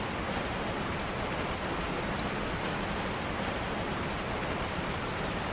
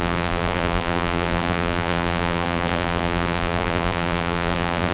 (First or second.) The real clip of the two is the first